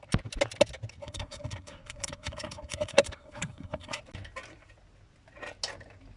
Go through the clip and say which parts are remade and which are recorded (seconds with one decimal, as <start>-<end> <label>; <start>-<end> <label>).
0.0-1.0 recorded; 1.0-4.0 remade; 4.0-6.2 recorded